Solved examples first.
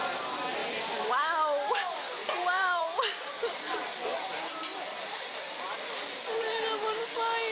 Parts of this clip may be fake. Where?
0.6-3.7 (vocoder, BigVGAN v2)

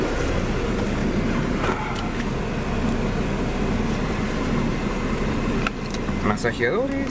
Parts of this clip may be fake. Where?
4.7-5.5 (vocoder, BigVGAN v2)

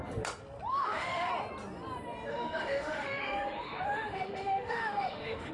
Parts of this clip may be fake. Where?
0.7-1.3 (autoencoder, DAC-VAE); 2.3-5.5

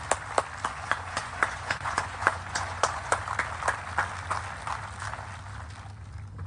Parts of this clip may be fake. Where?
0.7-3.2 (vocoder, Vocos)

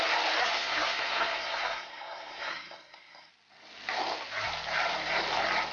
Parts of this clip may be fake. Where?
0.4-3.3 (codec, SNAC)

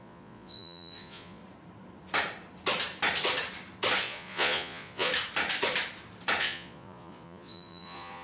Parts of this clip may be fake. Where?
0.0-1.4 (vocoder, Vocos); 4.0-5.1; 6.4-8.2

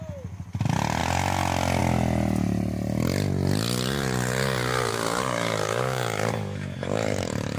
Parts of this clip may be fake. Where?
4.9-7.6 (codec, DAC)

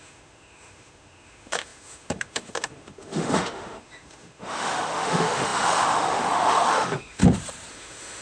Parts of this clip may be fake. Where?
0.0-7.2 (autoencoder, DAC-VAE); 7.7-8.2